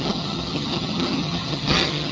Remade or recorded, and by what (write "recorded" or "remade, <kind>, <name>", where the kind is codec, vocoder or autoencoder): remade, vocoder, HiFi-GAN